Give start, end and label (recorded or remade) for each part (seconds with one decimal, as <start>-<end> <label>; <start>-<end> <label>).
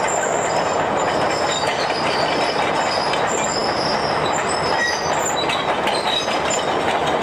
0.0-7.2 recorded